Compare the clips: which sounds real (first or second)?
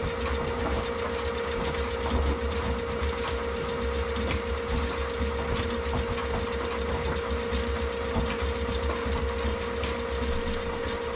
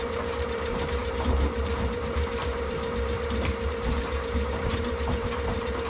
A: first